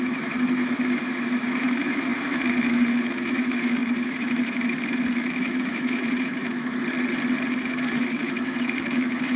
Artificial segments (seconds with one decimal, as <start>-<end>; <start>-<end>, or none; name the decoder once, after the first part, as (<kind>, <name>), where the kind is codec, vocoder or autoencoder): 0.0-6.7 (autoencoder, DAC-VAE); 7.5-9.4